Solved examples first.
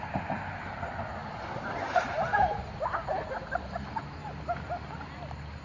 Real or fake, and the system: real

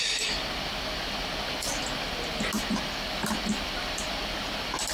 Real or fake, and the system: real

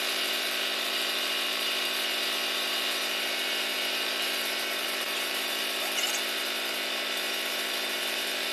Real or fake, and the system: fake, vocoder, BigVGAN v2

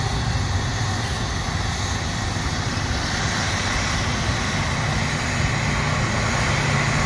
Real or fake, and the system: real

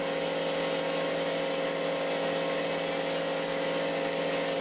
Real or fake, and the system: real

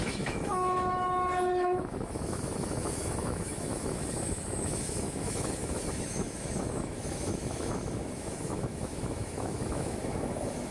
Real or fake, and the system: fake, autoencoder, DAC-VAE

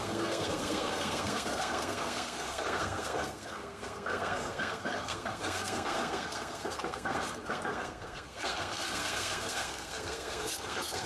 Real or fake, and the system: fake, codec, SNAC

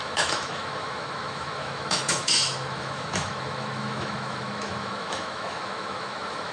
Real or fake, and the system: fake, autoencoder, DAC-VAE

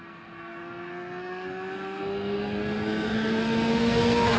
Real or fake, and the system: fake, codec, SNAC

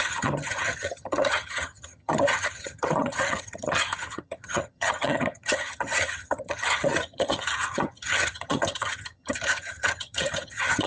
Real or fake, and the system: fake, vocoder, HiFi-GAN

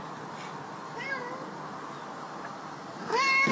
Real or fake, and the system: real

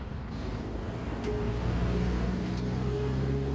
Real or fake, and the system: fake, codec, DAC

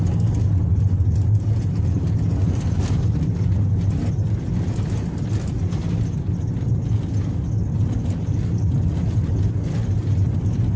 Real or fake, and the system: real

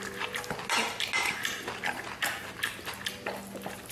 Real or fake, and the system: real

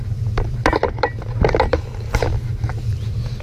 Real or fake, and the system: real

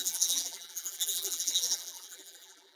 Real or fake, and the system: fake, vocoder, BigVGAN v2